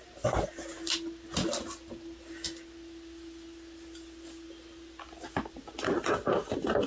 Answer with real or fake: real